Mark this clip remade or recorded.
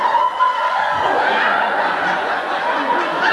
remade